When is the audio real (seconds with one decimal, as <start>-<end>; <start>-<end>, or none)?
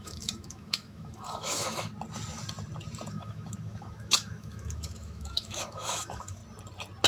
1.9-3.1; 6.4-7.1